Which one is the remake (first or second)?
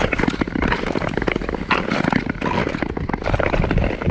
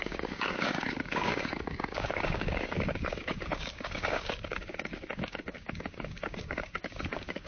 second